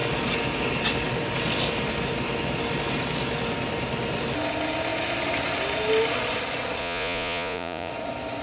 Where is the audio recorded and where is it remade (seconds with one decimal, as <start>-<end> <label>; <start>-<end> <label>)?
0.0-6.8 recorded; 6.8-7.9 remade; 7.9-8.4 recorded

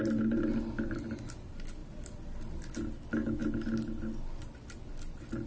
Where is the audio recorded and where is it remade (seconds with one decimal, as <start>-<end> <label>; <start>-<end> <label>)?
0.0-5.5 recorded

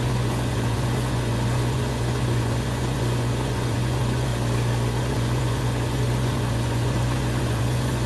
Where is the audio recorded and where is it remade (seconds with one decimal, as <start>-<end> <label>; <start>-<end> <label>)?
0.0-4.3 remade; 4.3-5.0 recorded; 5.0-8.1 remade